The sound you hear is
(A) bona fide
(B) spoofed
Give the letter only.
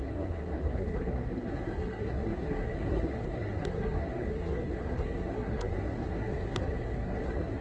B